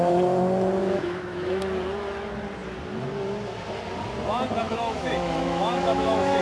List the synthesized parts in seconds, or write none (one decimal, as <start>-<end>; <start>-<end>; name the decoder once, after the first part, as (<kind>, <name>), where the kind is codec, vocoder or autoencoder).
0.8-1.6 (autoencoder, DAC-VAE); 4.6-6.4